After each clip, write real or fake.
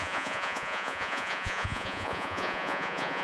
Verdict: fake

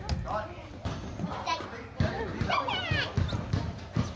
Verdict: real